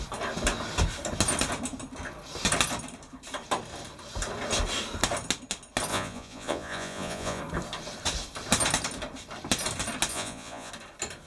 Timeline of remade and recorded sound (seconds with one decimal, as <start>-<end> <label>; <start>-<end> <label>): 0.0-5.9 recorded; 5.9-7.4 remade; 7.4-10.1 recorded; 10.1-10.7 remade; 10.7-11.3 recorded